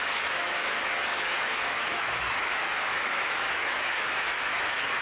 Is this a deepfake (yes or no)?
yes